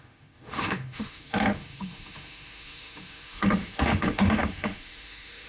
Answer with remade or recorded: remade